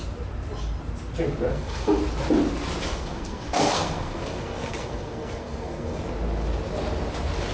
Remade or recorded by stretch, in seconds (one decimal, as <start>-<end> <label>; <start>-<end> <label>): 0.0-1.5 recorded; 1.5-2.0 remade; 2.0-2.9 recorded; 2.9-6.0 remade; 6.0-7.5 recorded